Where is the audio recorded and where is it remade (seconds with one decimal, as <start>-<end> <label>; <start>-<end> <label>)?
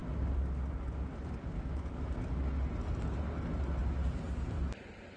0.0-5.2 recorded